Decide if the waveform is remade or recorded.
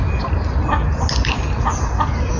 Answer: recorded